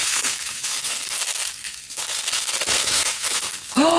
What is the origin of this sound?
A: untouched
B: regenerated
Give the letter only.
B